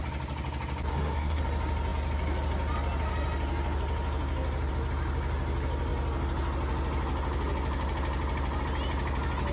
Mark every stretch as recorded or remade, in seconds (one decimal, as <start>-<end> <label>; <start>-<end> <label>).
0.0-0.9 recorded; 0.9-1.4 remade; 1.4-9.5 recorded